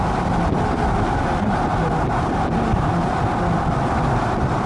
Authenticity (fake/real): real